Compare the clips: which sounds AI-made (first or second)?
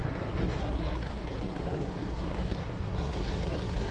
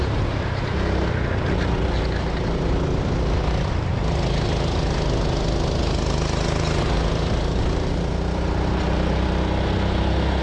first